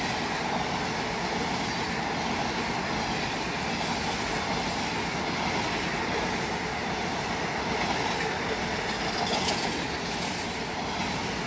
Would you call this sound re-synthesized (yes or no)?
no